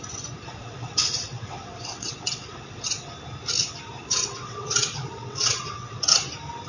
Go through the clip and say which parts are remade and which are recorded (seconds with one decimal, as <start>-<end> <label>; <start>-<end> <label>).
0.0-0.6 recorded; 0.6-3.1 remade; 3.1-4.0 recorded; 4.0-6.0 remade; 6.0-6.7 recorded